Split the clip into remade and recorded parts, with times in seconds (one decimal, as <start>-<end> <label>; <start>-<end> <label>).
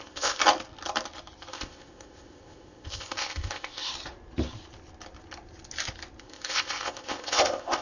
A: 0.0-0.4 remade; 0.4-1.5 recorded; 1.5-3.9 remade; 3.9-6.2 recorded; 6.2-7.8 remade